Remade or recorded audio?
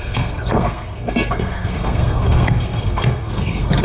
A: remade